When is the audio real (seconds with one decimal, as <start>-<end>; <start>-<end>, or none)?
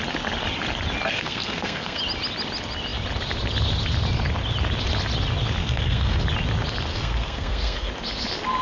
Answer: 0.0-1.1; 2.0-5.6; 6.2-6.9; 7.9-8.6